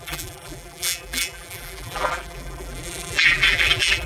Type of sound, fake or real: fake